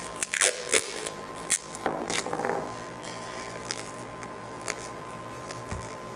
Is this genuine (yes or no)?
no